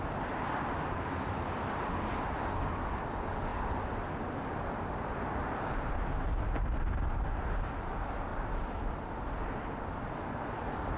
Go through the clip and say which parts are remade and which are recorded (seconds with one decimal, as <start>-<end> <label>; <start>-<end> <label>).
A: 0.0-11.0 recorded

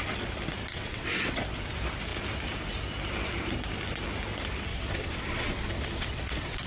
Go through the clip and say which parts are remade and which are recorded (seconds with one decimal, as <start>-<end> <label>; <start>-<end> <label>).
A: 0.0-0.7 recorded; 0.7-1.4 remade; 1.4-4.7 recorded; 4.7-6.7 remade

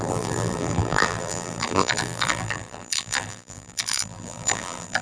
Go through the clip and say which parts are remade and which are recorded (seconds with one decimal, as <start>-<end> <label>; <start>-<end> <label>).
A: 0.0-5.0 remade